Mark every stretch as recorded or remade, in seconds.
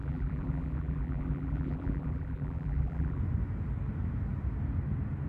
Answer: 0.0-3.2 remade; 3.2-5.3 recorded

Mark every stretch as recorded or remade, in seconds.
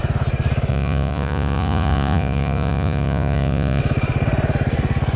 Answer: 0.0-0.7 recorded; 0.7-3.8 remade; 3.8-5.2 recorded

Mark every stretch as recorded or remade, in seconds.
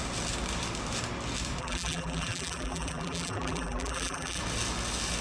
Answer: 0.0-1.6 recorded; 1.6-4.4 remade; 4.4-5.2 recorded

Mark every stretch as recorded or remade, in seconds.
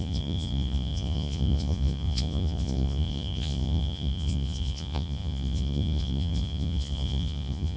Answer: 0.0-7.8 remade